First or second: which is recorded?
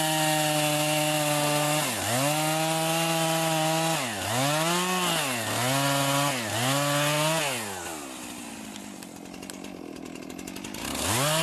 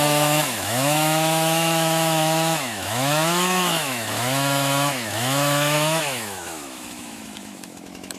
first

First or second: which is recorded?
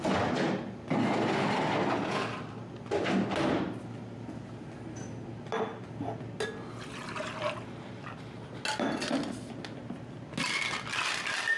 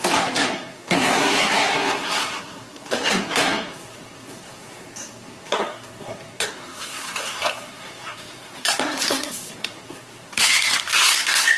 first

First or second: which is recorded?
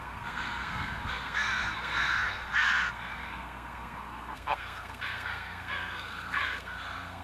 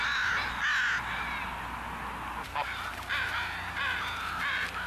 second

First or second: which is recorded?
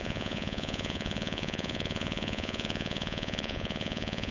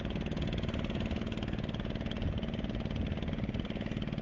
second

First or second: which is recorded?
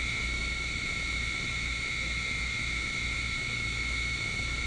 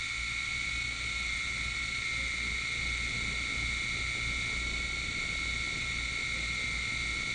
second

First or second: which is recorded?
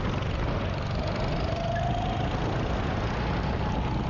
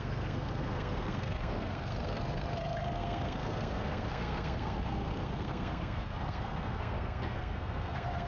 first